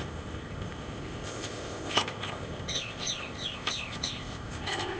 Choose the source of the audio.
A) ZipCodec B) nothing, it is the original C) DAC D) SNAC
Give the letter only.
A